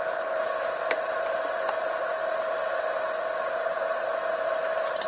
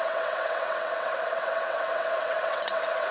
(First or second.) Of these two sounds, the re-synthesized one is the second